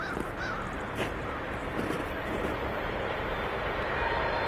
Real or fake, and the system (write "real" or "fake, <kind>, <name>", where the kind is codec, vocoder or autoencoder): fake, vocoder, BigVGAN v2